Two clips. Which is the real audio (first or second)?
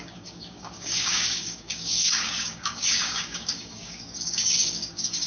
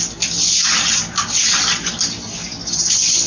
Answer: second